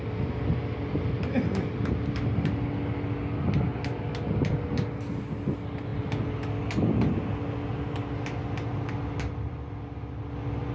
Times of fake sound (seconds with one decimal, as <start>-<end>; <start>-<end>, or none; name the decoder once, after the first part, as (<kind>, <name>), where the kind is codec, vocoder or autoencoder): none